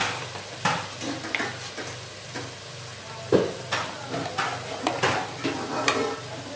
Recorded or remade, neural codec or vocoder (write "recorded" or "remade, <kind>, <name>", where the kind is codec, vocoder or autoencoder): recorded